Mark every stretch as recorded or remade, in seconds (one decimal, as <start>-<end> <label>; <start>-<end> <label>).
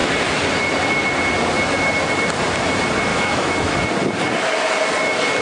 0.0-3.1 recorded; 3.1-3.7 remade; 3.7-5.4 recorded